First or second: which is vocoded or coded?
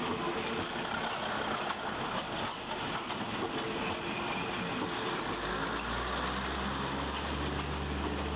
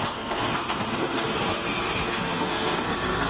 second